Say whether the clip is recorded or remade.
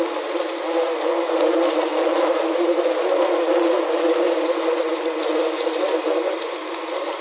recorded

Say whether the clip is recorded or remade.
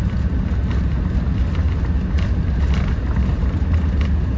recorded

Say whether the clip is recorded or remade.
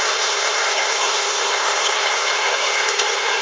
remade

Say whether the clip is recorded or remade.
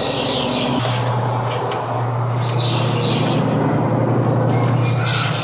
recorded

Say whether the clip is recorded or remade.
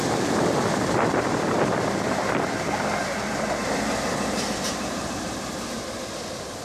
remade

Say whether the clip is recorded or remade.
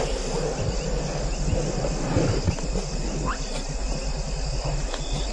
recorded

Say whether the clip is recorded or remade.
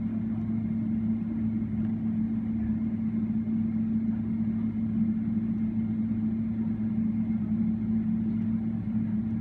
recorded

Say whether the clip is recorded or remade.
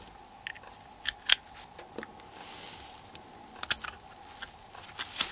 recorded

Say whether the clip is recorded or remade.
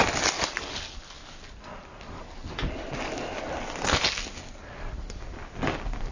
recorded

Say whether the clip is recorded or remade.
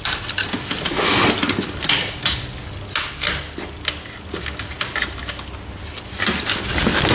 recorded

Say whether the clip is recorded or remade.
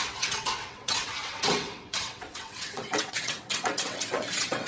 remade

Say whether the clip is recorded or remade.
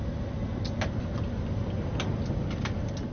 recorded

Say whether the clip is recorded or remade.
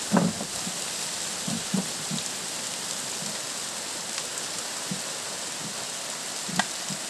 recorded